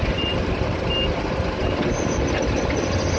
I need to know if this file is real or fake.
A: real